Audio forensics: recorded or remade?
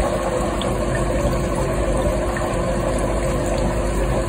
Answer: recorded